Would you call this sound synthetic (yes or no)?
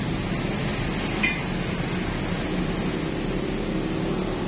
no